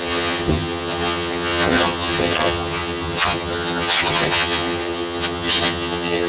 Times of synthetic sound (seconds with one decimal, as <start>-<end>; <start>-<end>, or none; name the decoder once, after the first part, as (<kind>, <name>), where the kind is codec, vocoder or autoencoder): 0.0-6.3 (vocoder, HiFi-GAN)